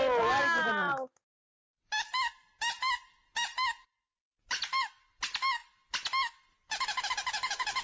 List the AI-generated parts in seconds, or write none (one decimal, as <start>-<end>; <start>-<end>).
none